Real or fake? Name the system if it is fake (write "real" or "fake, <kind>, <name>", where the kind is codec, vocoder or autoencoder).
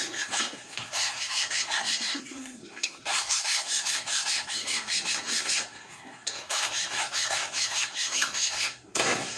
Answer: fake, codec, SNAC